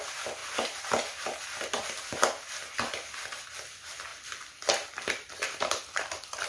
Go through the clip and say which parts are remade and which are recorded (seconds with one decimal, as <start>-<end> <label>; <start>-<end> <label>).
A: 0.0-4.1 recorded; 4.1-6.5 remade